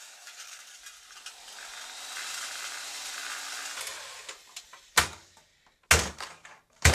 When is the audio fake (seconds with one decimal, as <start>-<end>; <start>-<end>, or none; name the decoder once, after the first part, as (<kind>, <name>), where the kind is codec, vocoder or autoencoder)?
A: 0.0-0.8 (codec, DAC); 4.9-5.5; 6.1-6.9